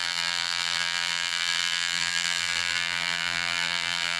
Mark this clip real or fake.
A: fake